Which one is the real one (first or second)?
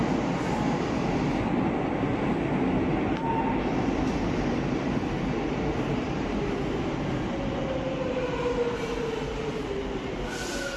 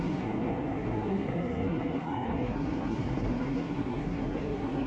first